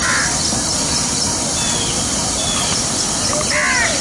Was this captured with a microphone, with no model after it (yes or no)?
yes